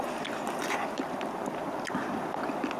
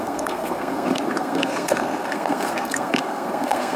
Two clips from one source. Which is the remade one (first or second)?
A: second